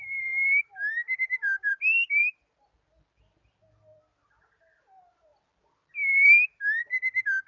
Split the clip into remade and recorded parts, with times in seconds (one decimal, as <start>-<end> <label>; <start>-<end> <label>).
0.0-7.5 recorded